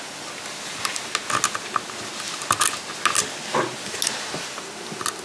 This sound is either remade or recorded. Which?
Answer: recorded